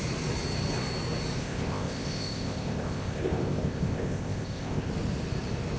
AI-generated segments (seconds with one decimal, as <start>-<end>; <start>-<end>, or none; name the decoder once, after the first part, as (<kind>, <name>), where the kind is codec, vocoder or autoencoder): 1.4-4.9 (codec, ZipCodec)